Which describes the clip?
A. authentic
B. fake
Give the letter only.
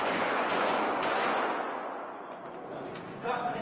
B